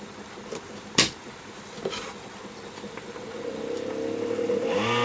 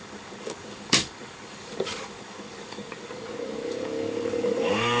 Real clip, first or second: first